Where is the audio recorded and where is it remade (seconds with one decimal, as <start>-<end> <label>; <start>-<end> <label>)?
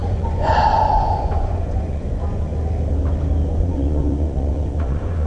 0.0-2.5 remade; 2.5-3.5 recorded; 3.5-5.3 remade